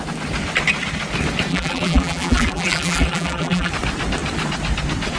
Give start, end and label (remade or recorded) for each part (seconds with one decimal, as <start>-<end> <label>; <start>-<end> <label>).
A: 0.0-1.5 recorded; 1.5-3.7 remade; 3.7-5.2 recorded